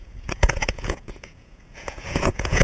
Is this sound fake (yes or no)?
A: yes